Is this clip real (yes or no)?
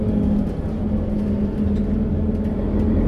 yes